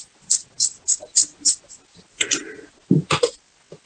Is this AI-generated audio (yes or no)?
no